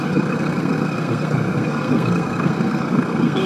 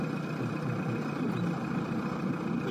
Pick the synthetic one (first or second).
first